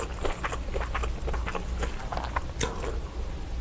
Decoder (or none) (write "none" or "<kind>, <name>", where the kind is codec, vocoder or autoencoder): none